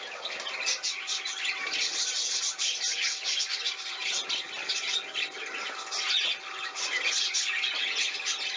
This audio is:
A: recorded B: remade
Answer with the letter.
A